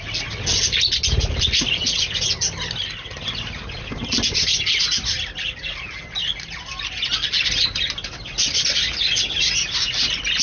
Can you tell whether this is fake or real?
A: real